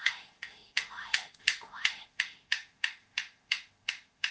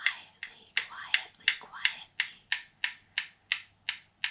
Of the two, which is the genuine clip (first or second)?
second